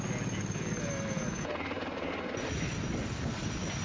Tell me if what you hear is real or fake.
real